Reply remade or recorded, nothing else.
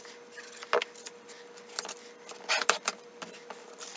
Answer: recorded